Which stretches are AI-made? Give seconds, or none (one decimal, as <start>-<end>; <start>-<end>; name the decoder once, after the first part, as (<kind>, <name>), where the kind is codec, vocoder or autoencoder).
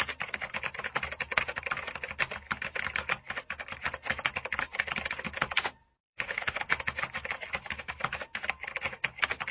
6.0-6.7 (autoencoder, DAC-VAE)